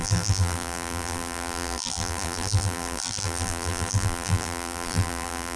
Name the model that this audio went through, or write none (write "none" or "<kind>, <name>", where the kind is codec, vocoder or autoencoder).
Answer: vocoder, BigVGAN v2